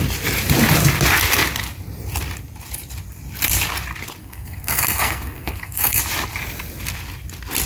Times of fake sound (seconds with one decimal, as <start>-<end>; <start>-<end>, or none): 4.2-6.0